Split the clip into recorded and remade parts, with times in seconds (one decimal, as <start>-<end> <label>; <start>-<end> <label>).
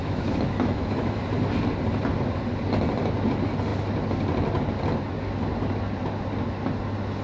0.0-1.2 remade; 1.2-7.2 recorded